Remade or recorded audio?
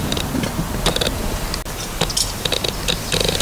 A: recorded